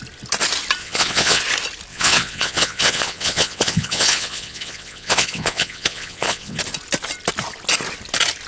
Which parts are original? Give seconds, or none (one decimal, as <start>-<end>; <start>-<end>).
0.0-0.8; 1.4-1.9; 6.6-8.5

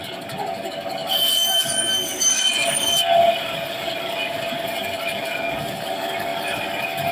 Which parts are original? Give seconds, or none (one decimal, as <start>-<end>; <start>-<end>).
none

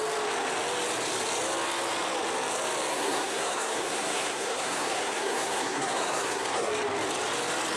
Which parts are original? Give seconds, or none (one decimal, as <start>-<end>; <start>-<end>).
0.0-2.9; 6.7-7.8

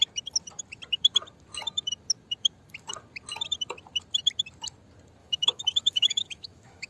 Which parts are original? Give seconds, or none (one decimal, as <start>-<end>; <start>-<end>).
0.0-5.2

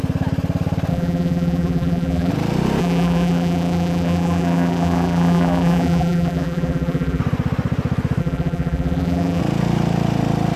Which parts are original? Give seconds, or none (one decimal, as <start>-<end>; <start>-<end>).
0.0-0.9; 2.3-2.8; 7.2-8.2; 9.4-10.6

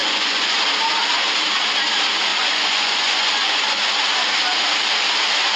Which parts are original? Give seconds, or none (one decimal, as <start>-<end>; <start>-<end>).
0.6-2.3; 3.8-5.6

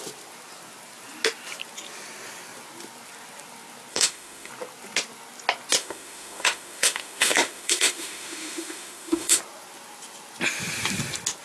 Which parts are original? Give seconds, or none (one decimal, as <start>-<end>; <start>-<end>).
0.0-3.9; 4.5-5.8; 9.4-11.4

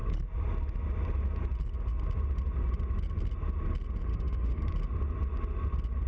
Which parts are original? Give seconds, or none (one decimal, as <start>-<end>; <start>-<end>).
0.0-4.1; 4.7-6.1